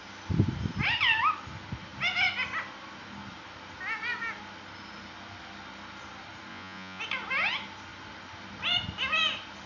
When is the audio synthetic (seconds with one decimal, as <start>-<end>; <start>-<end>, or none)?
6.5-7.0